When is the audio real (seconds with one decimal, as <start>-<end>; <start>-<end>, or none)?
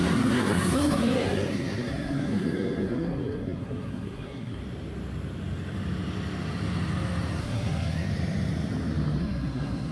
4.6-7.4; 8.1-9.2